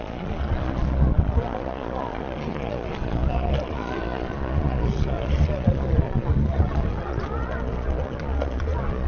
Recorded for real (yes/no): no